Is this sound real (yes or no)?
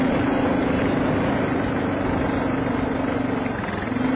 yes